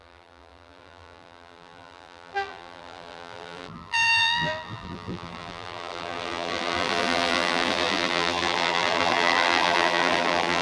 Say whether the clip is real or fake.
fake